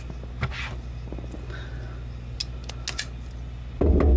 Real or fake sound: real